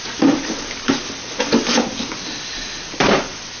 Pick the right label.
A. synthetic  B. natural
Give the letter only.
B